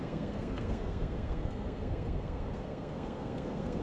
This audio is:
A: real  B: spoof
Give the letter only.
B